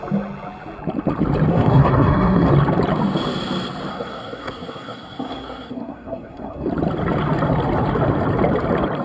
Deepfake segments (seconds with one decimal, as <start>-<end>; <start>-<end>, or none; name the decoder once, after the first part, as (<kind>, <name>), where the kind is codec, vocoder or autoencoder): 1.5-2.5 (codec, SNAC); 3.9-6.7